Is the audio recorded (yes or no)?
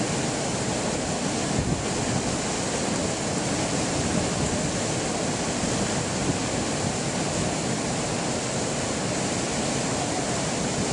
yes